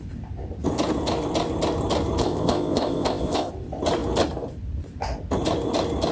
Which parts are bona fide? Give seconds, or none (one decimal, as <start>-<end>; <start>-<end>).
0.0-2.2; 3.5-6.1